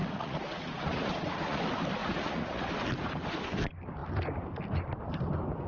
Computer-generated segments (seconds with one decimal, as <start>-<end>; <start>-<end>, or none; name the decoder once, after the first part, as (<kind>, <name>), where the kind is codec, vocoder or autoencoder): 0.0-1.6 (vocoder, Vocos); 2.0-2.7